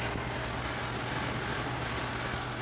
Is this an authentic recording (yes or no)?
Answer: yes